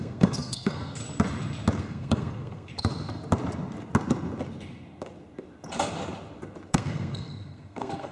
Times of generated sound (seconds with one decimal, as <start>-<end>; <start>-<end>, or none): 0.0-1.0; 1.8-2.7; 6.7-8.1

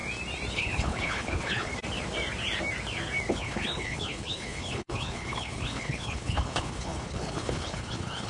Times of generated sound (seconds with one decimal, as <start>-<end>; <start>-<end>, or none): 0.5-1.7; 3.3-8.3

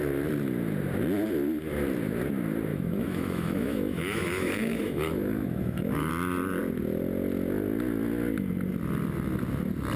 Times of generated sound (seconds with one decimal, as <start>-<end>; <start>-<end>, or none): 2.7-6.1

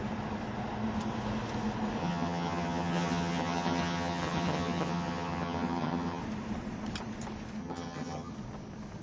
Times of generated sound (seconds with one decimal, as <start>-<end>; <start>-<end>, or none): 2.0-6.2; 7.6-8.3

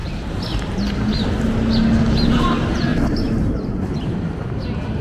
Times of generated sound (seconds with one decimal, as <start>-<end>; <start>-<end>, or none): 2.3-5.0

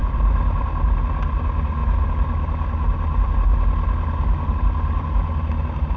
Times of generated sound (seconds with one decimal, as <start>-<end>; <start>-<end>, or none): 0.0-0.7

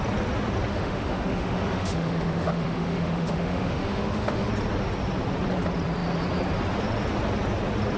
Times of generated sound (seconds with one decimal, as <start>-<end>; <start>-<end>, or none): 0.7-4.5

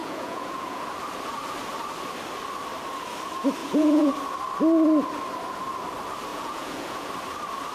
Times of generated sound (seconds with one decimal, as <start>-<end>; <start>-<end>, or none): 0.0-0.8; 3.6-4.1; 6.3-7.1